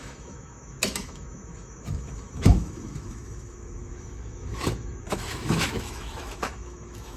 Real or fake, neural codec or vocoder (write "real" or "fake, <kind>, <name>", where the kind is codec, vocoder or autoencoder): fake, autoencoder, DAC-VAE